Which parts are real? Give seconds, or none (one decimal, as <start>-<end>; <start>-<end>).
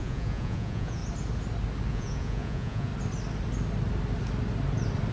1.0-1.9; 2.9-5.1